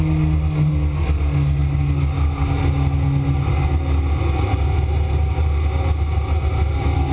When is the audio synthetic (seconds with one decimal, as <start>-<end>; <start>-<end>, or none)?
none